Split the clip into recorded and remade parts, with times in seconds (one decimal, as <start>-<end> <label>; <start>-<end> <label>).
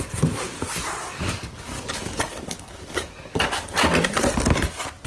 0.0-1.0 recorded; 1.0-3.7 remade; 3.7-5.1 recorded